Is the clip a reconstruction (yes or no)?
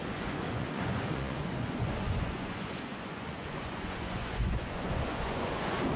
yes